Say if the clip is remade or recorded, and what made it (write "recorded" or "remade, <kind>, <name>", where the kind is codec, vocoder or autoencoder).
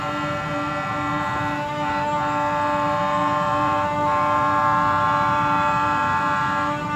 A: remade, vocoder, BigVGAN v2